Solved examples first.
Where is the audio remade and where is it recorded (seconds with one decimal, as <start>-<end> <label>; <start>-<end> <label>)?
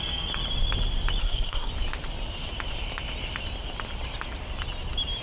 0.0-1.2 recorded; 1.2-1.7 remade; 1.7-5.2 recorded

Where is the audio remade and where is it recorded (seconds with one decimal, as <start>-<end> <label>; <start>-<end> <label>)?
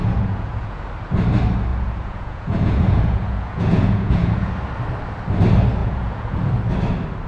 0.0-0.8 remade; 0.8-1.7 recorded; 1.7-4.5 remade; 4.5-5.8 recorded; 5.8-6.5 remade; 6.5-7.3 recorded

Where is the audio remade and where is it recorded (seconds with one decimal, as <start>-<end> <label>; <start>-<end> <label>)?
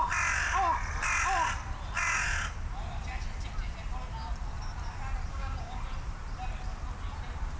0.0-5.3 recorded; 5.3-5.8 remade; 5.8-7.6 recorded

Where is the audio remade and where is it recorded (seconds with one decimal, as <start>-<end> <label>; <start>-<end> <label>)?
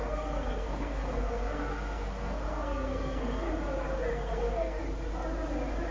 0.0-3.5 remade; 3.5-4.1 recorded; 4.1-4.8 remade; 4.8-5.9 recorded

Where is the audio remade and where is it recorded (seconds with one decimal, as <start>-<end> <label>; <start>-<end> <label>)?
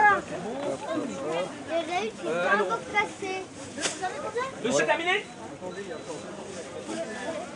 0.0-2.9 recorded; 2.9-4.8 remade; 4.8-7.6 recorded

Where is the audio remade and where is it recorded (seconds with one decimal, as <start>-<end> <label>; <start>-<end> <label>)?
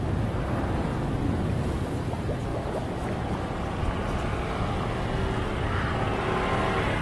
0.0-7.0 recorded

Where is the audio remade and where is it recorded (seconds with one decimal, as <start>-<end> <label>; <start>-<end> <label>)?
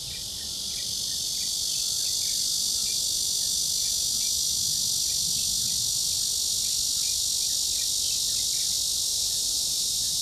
0.0-9.1 recorded; 9.1-10.2 remade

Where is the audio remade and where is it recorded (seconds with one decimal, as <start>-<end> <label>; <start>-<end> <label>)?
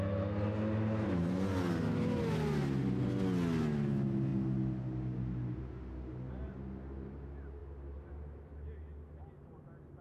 0.0-10.0 recorded